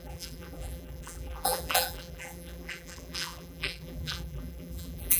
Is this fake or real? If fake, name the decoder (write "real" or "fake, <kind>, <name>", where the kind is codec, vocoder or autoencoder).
fake, vocoder, BigVGAN v2